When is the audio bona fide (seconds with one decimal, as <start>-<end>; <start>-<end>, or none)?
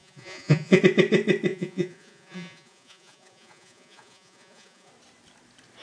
0.8-1.5; 4.9-5.8